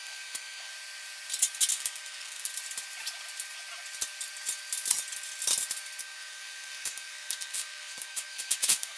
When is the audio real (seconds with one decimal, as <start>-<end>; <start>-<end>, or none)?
0.7-1.7; 2.5-6.0